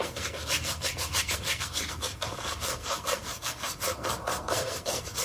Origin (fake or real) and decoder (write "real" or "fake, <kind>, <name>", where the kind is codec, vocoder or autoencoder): fake, codec, SNAC